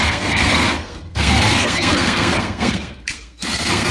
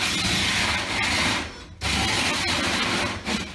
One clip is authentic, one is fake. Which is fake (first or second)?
first